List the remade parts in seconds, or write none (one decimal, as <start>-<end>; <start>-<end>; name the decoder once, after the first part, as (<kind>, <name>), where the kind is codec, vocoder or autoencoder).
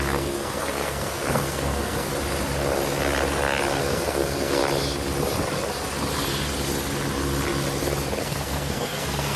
0.0-2.1 (codec, SNAC); 3.8-4.6; 8.2-9.4